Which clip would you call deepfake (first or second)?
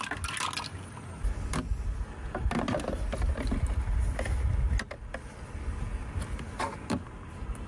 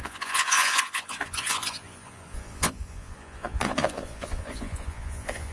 second